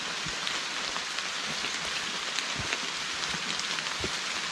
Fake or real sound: real